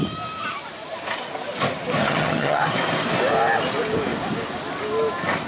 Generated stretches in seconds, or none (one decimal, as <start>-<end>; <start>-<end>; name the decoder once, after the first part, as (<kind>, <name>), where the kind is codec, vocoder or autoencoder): 2.0-2.6 (vocoder, HiFi-GAN)